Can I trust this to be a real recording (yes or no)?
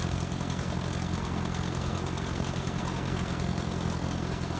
no